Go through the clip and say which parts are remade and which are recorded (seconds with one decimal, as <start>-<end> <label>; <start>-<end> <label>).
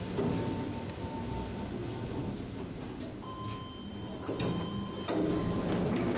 0.0-6.2 recorded